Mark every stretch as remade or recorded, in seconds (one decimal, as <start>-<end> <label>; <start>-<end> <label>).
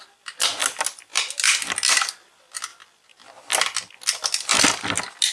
0.0-5.3 recorded